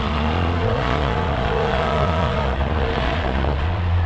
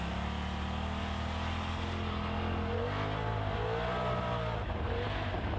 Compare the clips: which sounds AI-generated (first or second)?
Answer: first